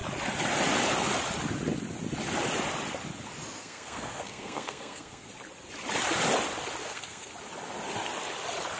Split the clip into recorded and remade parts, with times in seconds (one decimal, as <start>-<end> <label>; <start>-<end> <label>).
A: 0.0-3.6 recorded; 3.6-5.3 remade; 5.3-6.8 recorded; 6.8-7.3 remade; 7.3-8.8 recorded